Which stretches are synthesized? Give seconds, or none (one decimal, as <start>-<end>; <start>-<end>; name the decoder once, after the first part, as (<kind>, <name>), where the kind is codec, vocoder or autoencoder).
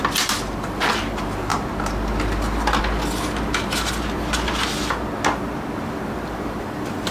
0.0-1.5 (vocoder, BigVGAN v2); 5.8-7.1